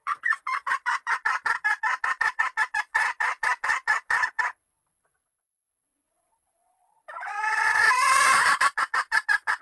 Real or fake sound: fake